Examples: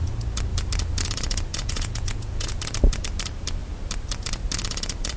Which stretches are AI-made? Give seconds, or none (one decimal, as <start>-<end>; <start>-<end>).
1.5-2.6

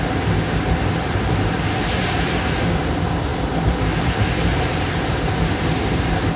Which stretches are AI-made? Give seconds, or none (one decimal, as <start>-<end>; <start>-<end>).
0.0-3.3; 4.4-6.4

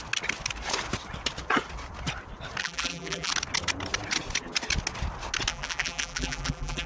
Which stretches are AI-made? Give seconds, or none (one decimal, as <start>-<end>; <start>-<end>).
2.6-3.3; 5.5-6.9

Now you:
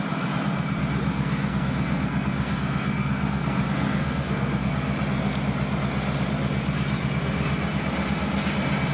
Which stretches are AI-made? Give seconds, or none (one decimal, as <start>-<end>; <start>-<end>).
1.1-4.7

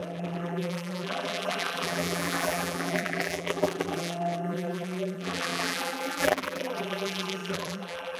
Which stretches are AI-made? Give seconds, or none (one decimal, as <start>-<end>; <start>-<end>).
0.0-8.2